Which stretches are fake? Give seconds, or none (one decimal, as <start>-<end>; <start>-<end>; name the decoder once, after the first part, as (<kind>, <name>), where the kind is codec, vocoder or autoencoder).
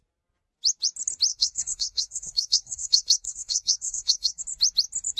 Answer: 1.3-4.4 (codec, SNAC)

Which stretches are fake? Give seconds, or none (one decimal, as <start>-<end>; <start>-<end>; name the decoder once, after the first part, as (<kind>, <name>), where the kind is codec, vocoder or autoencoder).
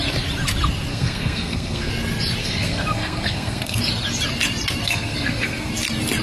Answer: 0.9-1.9 (codec, SNAC); 2.4-3.8; 4.8-5.7